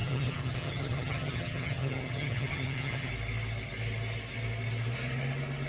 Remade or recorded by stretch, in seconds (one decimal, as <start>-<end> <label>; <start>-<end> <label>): 0.0-3.1 remade; 3.1-5.7 recorded